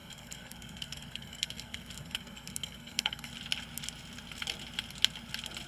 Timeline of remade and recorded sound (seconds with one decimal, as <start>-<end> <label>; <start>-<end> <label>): 0.0-3.3 remade; 3.3-5.7 recorded